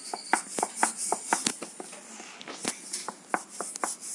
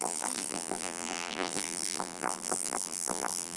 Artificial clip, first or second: second